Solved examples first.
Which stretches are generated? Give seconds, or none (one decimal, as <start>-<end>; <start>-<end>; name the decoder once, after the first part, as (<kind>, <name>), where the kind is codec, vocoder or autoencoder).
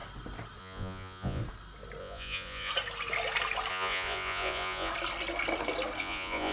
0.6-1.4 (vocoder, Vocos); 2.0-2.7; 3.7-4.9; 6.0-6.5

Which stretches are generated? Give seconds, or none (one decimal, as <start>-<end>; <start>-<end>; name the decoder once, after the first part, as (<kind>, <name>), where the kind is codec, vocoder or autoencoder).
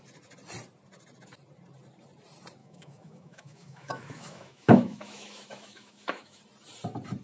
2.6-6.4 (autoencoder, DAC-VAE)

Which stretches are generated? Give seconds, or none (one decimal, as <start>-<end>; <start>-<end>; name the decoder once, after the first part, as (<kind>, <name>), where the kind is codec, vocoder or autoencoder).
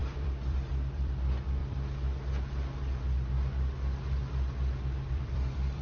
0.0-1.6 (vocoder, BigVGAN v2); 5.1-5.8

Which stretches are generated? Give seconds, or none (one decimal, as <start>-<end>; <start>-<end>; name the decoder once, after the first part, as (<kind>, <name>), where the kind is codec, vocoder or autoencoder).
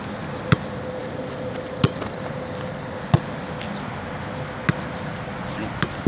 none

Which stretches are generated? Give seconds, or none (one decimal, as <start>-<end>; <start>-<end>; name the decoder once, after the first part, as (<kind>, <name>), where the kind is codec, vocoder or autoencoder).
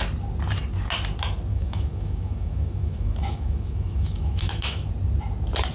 1.5-4.9 (autoencoder, DAC-VAE)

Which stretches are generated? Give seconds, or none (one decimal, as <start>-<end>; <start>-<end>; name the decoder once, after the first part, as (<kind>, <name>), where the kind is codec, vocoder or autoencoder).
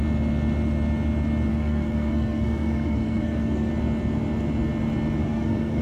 1.5-3.7 (codec, SNAC); 5.2-5.8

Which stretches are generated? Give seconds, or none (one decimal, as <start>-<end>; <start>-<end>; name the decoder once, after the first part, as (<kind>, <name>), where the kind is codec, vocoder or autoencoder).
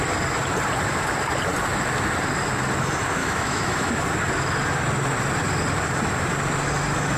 3.2-3.9 (autoencoder, DAC-VAE)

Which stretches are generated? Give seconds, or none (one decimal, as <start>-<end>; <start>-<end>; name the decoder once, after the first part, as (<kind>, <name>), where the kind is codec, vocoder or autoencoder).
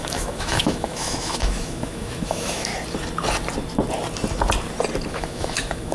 0.0-2.7 (autoencoder, DAC-VAE); 5.1-5.9